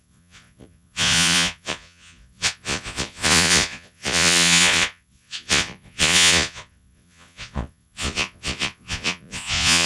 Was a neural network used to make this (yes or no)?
yes